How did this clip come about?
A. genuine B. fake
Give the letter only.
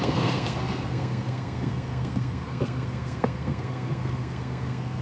B